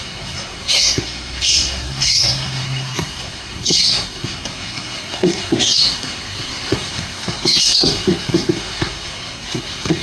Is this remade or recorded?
remade